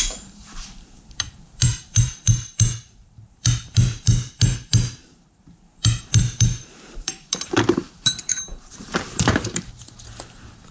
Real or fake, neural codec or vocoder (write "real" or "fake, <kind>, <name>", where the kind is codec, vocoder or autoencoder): fake, vocoder, BigVGAN v2